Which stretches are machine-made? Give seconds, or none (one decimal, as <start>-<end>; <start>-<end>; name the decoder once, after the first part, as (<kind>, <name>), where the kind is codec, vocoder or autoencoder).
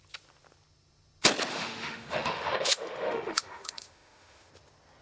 1.5-4.5 (autoencoder, DAC-VAE)